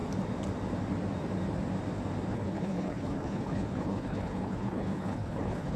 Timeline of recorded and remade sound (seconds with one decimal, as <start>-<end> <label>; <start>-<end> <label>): 0.0-2.3 recorded; 2.3-5.8 remade